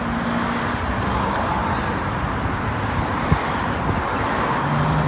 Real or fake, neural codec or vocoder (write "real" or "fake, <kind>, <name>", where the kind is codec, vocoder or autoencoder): real